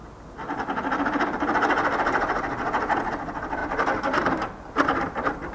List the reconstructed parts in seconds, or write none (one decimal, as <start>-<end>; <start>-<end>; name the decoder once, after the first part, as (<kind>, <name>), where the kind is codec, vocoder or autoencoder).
none